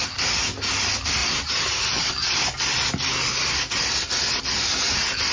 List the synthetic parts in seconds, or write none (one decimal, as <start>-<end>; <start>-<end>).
none